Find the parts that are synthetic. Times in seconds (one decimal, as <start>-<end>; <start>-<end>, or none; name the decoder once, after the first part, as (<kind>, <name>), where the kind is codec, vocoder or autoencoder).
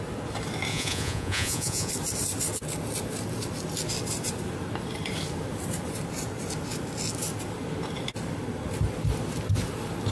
0.7-1.9 (vocoder, Vocos)